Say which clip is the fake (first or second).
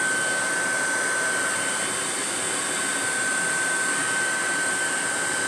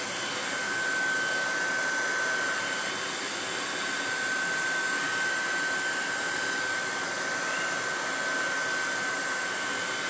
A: second